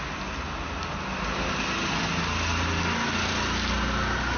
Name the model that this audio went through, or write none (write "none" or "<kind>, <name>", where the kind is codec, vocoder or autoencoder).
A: none